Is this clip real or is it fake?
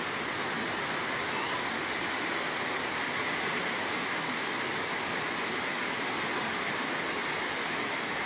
real